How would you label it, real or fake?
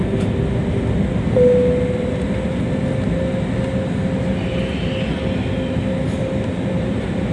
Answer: real